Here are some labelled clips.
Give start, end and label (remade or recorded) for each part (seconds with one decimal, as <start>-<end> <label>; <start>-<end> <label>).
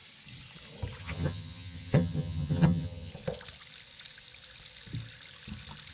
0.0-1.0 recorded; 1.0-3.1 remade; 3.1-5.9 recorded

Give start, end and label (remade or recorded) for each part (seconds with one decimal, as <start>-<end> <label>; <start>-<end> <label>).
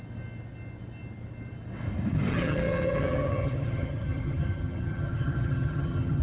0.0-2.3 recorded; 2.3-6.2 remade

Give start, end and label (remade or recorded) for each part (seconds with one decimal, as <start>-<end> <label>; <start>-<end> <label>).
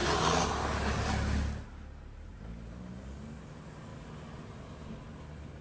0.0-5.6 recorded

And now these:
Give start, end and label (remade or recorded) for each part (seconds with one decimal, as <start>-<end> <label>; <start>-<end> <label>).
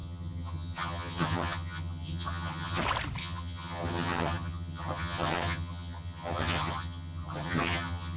0.0-2.8 remade; 2.8-3.2 recorded; 3.2-8.2 remade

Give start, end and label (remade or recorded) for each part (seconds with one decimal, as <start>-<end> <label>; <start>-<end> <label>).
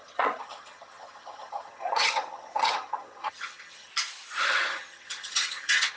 0.0-3.9 remade; 3.9-4.4 recorded; 4.4-6.0 remade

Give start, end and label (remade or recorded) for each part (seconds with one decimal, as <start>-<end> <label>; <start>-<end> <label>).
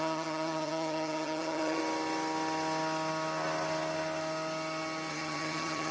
0.0-1.8 remade; 1.8-5.1 recorded; 5.1-5.9 remade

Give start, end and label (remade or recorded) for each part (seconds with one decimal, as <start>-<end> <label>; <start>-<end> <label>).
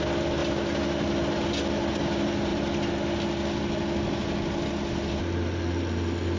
0.0-6.4 recorded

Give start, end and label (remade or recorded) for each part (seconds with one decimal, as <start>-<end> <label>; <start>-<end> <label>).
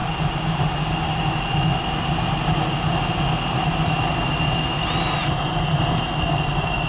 0.0-6.9 recorded